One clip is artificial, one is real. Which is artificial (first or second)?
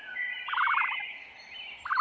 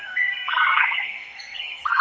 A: second